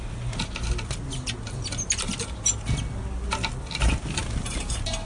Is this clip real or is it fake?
real